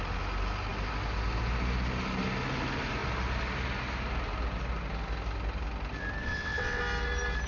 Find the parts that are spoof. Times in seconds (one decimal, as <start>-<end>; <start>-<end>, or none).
6.2-6.8